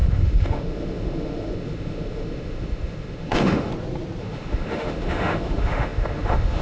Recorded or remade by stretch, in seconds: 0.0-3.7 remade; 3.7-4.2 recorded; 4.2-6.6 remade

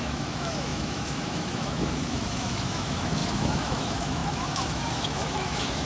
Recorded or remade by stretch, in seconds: 0.0-5.9 remade